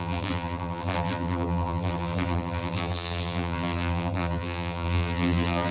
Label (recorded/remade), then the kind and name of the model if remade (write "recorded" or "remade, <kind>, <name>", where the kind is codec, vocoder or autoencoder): remade, vocoder, BigVGAN v2